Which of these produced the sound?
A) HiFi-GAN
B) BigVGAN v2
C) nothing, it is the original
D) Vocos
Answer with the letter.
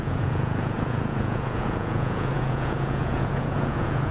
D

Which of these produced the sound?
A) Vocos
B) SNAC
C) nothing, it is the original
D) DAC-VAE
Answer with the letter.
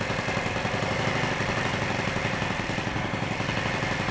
C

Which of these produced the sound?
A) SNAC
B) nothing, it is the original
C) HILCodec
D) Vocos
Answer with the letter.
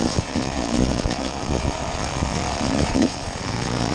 D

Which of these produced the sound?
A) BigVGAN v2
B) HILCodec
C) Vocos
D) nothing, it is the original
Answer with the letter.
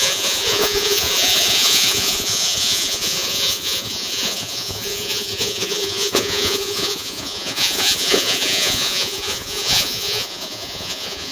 C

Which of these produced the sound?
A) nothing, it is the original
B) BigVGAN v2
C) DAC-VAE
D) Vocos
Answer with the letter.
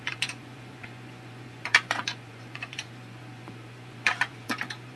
D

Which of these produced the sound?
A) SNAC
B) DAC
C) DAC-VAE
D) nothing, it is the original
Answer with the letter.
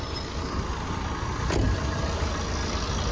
D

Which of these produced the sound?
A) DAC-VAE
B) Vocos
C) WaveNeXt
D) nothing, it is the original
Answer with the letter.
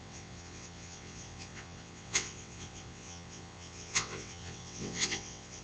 C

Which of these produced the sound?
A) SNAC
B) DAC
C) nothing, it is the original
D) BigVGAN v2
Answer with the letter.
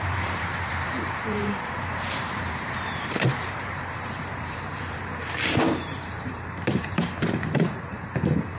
D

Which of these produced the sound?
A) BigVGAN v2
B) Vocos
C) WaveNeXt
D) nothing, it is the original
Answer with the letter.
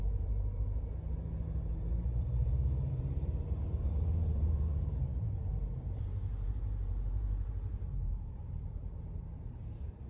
A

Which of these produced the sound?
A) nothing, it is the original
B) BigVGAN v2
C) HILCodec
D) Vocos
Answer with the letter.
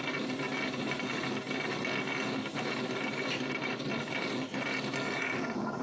A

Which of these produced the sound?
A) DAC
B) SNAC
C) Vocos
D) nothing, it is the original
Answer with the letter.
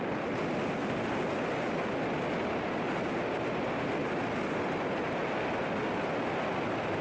D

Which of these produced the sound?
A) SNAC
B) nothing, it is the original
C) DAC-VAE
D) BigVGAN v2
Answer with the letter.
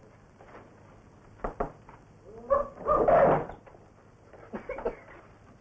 B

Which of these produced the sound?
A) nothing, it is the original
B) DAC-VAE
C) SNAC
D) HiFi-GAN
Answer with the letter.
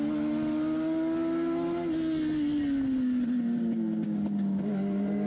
A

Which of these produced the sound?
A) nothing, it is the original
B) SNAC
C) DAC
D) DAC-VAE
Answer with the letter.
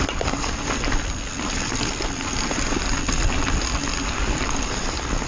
A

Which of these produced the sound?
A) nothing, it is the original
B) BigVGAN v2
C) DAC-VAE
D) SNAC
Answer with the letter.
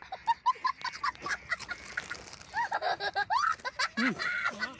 A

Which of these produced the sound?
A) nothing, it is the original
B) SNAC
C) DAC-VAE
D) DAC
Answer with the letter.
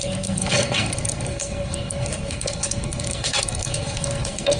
B